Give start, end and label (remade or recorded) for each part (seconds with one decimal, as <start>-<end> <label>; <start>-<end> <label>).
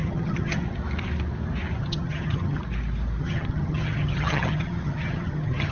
0.0-0.6 remade; 0.6-1.8 recorded; 1.8-2.6 remade; 2.6-3.2 recorded; 3.2-5.7 remade